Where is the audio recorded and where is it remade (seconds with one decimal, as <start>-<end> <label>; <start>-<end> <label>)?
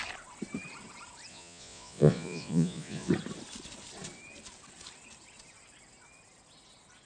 0.0-1.3 recorded; 1.3-3.1 remade; 3.1-7.1 recorded